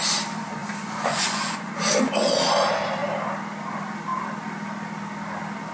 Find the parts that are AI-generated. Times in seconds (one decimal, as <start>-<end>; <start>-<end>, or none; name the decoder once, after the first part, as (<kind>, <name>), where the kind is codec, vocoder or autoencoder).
0.6-1.7 (vocoder, Vocos)